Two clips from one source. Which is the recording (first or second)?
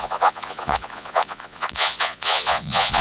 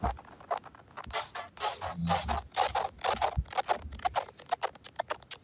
second